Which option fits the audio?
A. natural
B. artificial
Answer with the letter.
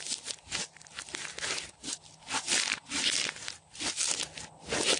A